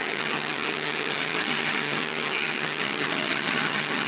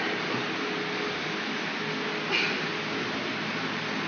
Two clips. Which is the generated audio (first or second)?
first